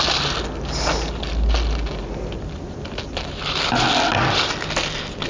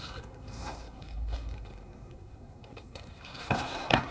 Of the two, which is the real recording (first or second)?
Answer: first